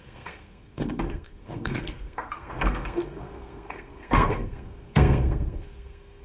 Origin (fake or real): fake